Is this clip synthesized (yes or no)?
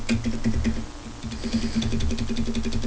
no